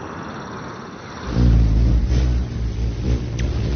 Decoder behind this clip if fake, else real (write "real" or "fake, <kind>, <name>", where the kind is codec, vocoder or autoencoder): real